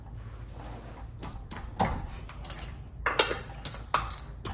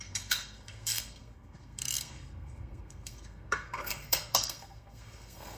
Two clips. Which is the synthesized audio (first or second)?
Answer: second